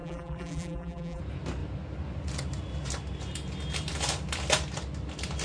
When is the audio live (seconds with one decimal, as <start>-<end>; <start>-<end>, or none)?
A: 1.2-5.4